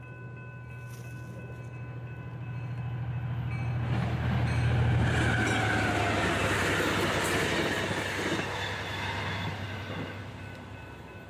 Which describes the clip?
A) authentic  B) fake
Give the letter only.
A